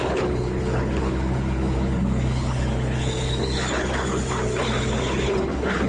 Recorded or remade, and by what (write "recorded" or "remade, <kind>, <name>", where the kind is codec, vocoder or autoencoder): remade, codec, HILCodec